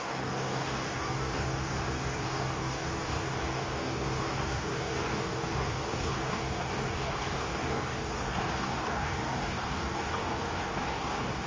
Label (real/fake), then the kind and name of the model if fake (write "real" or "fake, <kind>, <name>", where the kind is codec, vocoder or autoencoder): fake, codec, DAC